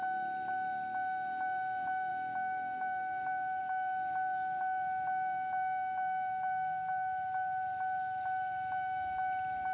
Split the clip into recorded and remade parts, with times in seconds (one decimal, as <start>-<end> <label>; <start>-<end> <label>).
0.0-9.7 recorded